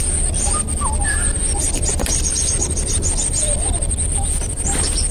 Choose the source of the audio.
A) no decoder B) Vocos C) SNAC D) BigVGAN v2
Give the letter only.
A